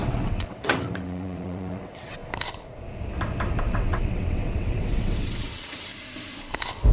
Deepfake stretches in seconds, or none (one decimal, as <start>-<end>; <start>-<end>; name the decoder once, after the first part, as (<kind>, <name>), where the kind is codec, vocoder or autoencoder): 0.0-2.2 (vocoder, WaveNeXt); 3.6-5.9